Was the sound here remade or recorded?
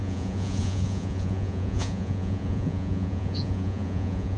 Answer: remade